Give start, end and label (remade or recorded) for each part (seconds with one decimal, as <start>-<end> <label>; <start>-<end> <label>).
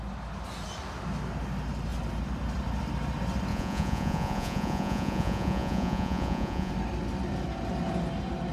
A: 0.0-3.5 recorded; 3.5-6.7 remade; 6.7-8.5 recorded